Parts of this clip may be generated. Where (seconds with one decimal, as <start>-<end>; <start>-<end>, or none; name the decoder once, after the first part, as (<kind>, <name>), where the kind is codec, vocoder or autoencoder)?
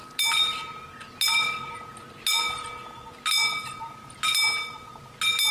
none